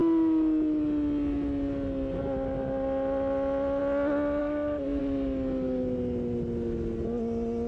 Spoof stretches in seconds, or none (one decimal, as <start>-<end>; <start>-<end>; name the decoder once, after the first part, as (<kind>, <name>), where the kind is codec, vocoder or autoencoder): 4.4-5.0 (codec, SNAC)